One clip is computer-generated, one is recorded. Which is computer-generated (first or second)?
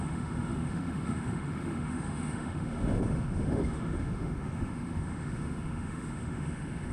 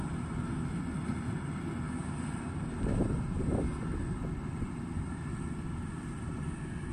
first